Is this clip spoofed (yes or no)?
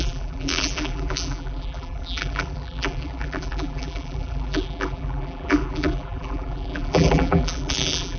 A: yes